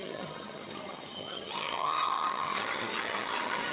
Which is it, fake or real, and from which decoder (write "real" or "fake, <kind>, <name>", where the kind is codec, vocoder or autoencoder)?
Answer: fake, vocoder, HiFi-GAN